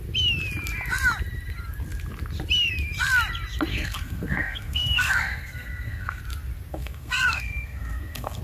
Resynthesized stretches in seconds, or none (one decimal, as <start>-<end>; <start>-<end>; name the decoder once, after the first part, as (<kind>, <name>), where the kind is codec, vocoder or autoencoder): 3.7-6.2 (codec, SNAC); 6.7-8.4